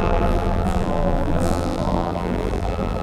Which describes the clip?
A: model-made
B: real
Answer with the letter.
A